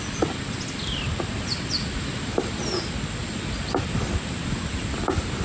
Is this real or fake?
real